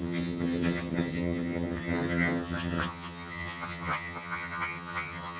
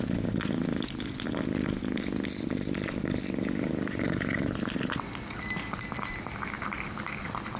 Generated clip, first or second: first